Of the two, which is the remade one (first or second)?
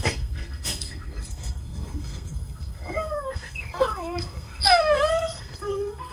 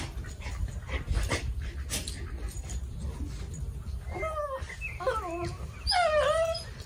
first